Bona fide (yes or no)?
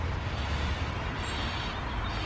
yes